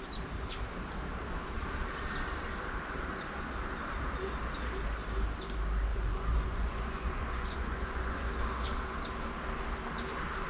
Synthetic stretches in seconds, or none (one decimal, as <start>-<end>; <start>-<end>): 5.9-8.3